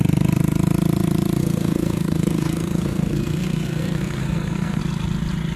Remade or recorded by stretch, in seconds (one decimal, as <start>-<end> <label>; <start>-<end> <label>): 0.0-1.4 recorded; 1.4-4.8 remade; 4.8-5.6 recorded